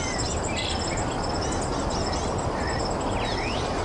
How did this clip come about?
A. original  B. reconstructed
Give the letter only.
A